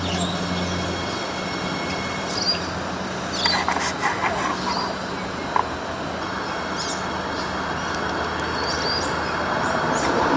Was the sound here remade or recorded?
recorded